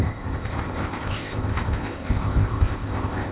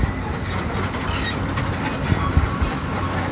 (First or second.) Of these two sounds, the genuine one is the second